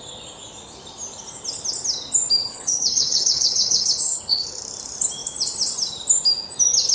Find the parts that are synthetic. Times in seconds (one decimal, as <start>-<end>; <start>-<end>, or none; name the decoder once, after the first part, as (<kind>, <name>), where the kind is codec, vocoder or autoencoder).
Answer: 2.4-4.6 (codec, HILCodec)